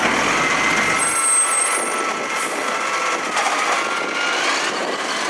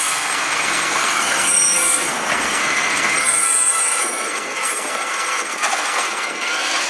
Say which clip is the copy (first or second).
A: second